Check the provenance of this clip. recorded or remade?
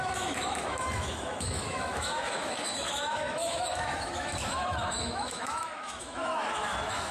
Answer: remade